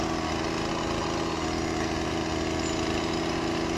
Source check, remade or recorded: recorded